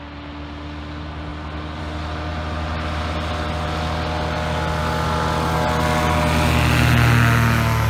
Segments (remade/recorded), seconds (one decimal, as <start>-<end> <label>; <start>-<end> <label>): 0.0-7.9 recorded